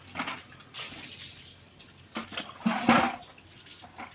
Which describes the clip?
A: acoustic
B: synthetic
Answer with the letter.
A